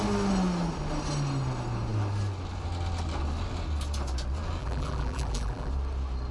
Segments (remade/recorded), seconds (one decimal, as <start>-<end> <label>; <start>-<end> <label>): 0.0-4.6 recorded; 4.6-5.7 remade; 5.7-6.3 recorded

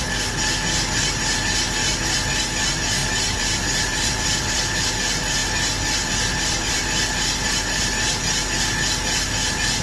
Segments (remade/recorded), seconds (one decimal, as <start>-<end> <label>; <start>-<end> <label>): 0.0-3.0 recorded; 3.0-4.9 remade; 4.9-5.4 recorded; 5.4-6.8 remade; 6.8-9.8 recorded

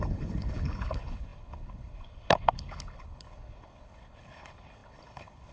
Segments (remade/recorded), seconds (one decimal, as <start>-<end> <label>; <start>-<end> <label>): 0.0-5.5 remade

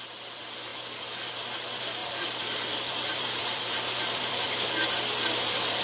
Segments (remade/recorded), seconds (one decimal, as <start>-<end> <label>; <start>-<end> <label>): 0.0-2.0 recorded; 2.0-5.8 remade

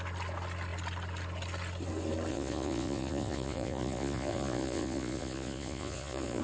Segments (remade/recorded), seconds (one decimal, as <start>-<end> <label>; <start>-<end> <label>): 0.0-2.3 recorded; 2.3-6.4 remade

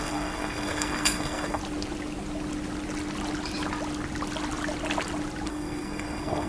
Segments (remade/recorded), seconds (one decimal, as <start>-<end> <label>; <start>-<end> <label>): 0.0-1.6 remade; 1.6-5.5 recorded; 5.5-6.5 remade

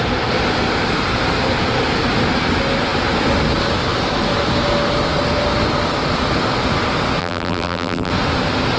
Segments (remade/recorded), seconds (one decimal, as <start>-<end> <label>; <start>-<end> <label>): 0.0-7.2 recorded; 7.2-8.1 remade; 8.1-8.8 recorded

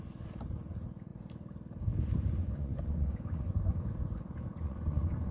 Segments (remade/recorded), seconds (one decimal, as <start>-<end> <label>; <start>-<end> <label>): 0.0-2.4 recorded; 2.4-5.3 remade